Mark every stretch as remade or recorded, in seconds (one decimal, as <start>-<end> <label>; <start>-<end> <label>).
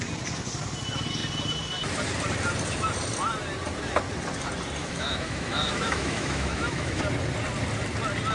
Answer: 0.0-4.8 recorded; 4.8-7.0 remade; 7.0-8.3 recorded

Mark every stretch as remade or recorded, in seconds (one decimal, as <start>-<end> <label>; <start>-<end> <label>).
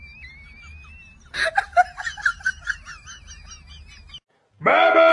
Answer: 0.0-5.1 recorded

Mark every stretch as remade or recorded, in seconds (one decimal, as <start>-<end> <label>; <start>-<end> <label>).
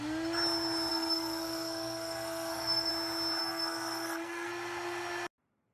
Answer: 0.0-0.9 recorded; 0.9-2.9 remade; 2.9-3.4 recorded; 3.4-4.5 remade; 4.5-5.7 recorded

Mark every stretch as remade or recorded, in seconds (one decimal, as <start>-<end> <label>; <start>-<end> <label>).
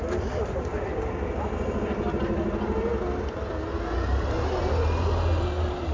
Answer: 0.0-5.9 recorded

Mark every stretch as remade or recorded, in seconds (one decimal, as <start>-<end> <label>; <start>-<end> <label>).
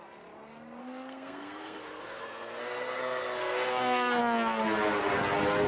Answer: 0.0-0.8 recorded; 0.8-4.2 remade; 4.2-5.7 recorded